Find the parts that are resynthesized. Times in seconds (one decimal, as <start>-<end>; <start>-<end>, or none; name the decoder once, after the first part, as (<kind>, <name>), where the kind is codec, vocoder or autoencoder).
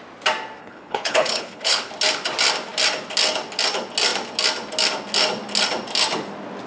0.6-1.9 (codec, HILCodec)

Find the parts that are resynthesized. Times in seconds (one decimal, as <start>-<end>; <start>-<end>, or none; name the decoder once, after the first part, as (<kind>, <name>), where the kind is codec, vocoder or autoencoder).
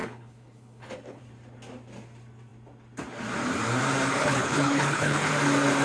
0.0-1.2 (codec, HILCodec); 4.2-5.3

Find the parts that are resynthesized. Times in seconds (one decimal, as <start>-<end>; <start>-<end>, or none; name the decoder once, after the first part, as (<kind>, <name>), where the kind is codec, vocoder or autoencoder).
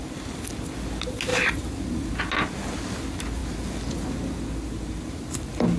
none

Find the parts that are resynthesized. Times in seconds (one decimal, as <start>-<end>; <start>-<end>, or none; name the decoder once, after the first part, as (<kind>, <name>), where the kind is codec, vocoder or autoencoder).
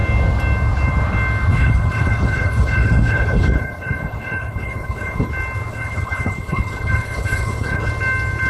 1.5-5.3 (codec, HILCodec); 5.7-7.9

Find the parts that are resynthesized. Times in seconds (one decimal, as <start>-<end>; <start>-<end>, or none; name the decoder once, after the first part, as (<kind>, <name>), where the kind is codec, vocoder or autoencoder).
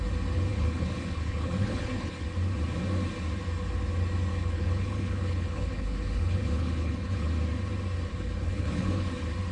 0.5-2.2 (codec, HILCodec); 4.3-7.3; 8.1-9.1